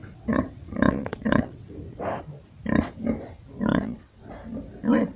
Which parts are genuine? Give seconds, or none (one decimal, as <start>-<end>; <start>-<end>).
1.7-3.7; 4.3-5.2